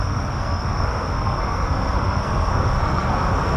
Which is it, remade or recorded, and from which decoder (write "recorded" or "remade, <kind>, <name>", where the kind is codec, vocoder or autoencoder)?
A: remade, codec, SNAC